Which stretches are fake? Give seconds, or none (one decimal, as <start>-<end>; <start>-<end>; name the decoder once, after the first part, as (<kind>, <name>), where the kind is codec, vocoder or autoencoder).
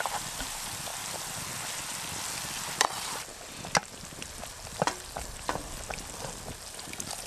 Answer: none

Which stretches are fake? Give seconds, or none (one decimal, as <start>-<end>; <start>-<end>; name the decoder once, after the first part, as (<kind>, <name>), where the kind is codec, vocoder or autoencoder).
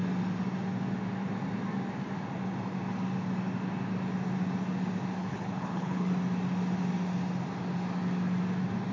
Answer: 5.2-6.1 (codec, HILCodec)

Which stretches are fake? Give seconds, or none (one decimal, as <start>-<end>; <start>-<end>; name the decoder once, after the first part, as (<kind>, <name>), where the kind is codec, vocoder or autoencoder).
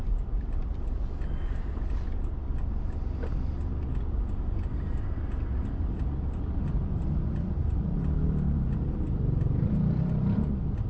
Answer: 0.0-0.7 (vocoder, BigVGAN v2); 5.5-10.9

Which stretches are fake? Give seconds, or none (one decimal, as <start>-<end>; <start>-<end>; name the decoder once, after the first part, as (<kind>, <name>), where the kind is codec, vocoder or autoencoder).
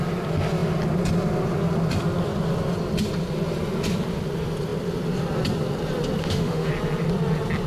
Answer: 6.2-6.7 (autoencoder, DAC-VAE)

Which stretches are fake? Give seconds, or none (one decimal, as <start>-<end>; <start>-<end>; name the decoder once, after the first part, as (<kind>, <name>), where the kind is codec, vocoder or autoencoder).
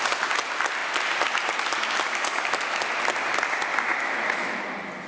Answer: 3.9-4.6 (autoencoder, DAC-VAE)